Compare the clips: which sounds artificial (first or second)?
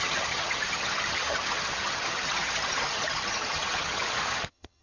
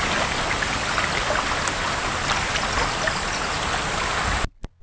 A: first